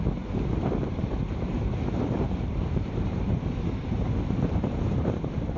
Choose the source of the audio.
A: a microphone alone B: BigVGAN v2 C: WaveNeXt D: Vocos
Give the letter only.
B